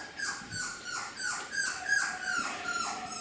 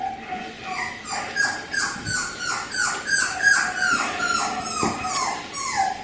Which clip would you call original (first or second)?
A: second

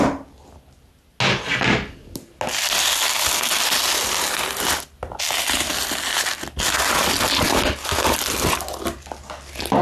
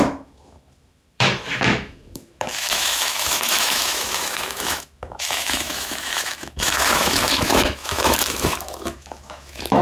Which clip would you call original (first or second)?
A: first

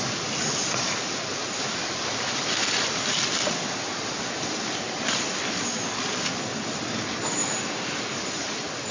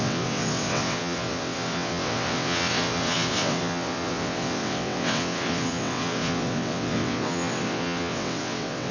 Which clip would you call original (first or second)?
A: first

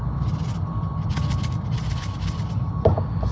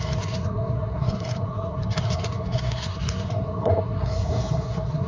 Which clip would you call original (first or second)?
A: first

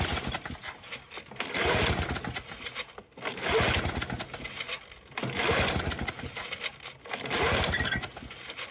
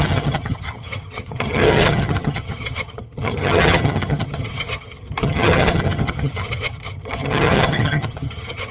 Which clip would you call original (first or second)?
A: first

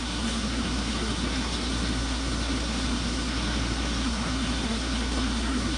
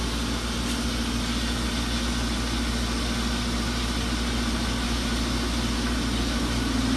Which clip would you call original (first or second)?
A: second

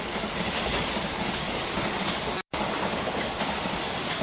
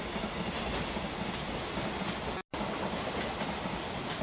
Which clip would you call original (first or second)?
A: second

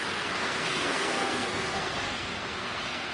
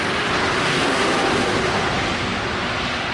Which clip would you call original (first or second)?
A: second